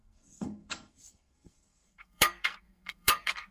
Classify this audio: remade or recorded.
remade